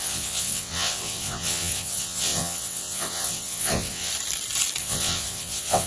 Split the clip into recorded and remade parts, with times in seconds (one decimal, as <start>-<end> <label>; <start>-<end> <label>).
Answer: 0.0-4.1 remade; 4.1-4.8 recorded; 4.8-5.9 remade

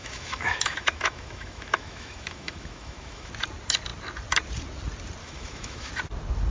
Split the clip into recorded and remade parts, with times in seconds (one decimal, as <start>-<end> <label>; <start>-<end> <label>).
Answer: 0.0-3.3 remade; 3.3-5.2 recorded; 5.2-5.9 remade; 5.9-6.5 recorded

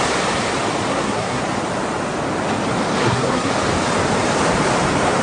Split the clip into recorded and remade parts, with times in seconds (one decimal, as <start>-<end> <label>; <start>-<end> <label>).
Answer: 0.0-0.9 recorded; 0.9-1.4 remade; 1.4-3.0 recorded; 3.0-3.5 remade; 3.5-5.2 recorded

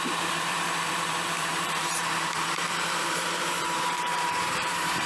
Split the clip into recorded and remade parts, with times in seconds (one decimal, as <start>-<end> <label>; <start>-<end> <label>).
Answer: 0.0-5.1 remade

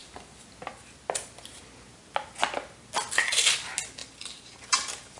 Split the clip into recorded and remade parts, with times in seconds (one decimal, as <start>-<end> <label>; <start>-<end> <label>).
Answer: 0.0-4.0 recorded; 4.0-5.2 remade

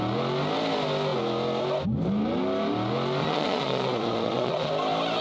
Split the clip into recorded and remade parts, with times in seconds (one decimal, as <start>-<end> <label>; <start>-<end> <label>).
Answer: 0.0-3.2 recorded; 3.2-4.7 remade; 4.7-5.2 recorded

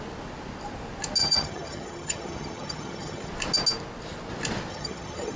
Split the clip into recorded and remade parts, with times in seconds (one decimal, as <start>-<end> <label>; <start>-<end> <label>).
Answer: 0.0-1.2 recorded; 1.2-3.3 remade; 3.3-4.7 recorded; 4.7-5.4 remade

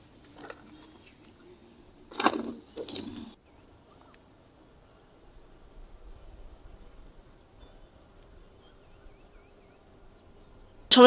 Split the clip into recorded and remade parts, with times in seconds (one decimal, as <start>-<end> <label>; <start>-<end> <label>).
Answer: 0.0-11.1 recorded